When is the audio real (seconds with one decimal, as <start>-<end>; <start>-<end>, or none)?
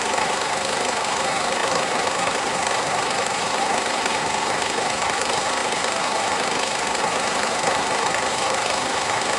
none